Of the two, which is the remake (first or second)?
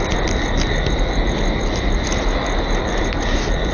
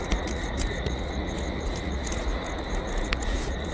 second